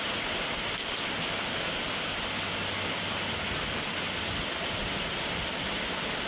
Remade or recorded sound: recorded